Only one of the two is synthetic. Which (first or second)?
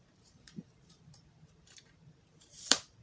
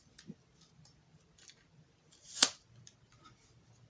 first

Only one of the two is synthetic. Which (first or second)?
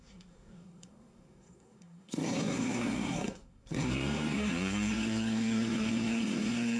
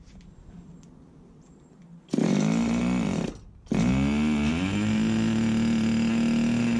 first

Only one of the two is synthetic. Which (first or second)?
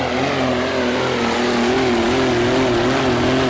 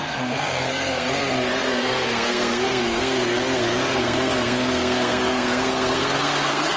second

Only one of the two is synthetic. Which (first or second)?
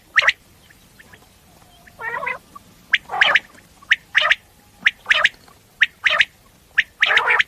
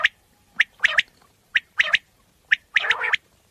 second